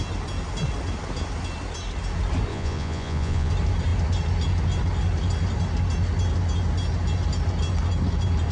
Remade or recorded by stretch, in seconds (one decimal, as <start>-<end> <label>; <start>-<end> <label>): 0.0-2.5 recorded; 2.5-3.5 remade; 3.5-8.5 recorded